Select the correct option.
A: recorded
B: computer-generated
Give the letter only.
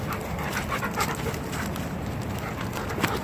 A